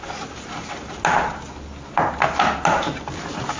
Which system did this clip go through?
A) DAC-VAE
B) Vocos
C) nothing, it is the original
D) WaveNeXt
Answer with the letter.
C